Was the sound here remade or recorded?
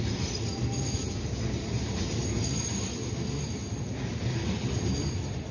recorded